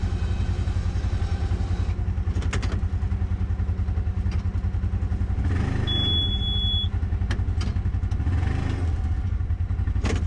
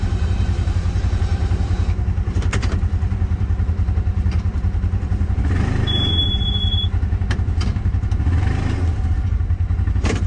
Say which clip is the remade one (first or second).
second